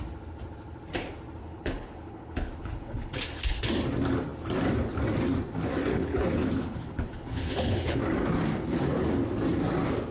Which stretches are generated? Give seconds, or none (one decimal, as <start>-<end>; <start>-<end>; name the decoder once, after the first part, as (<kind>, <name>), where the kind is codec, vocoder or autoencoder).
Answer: 1.4-3.6 (codec, HILCodec); 5.9-8.0